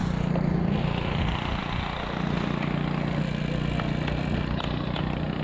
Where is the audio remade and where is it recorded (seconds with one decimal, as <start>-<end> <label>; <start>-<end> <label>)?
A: 0.0-5.4 recorded